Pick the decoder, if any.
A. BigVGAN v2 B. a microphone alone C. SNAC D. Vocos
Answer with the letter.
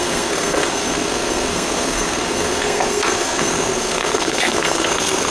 C